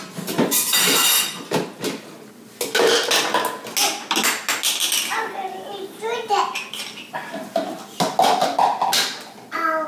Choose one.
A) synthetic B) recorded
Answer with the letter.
B